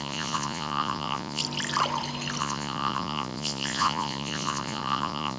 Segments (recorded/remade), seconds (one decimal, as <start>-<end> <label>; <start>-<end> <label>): 0.0-1.4 remade; 1.4-2.4 recorded; 2.4-5.4 remade